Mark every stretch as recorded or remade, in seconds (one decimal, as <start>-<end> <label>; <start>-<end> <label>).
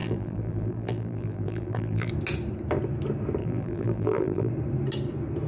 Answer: 0.0-2.1 remade; 2.1-3.4 recorded; 3.4-4.5 remade; 4.5-5.5 recorded